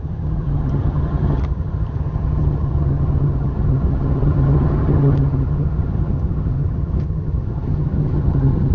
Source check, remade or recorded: remade